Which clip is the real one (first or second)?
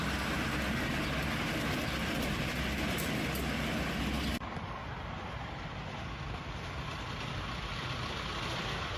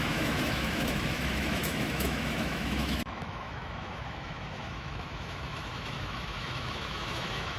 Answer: first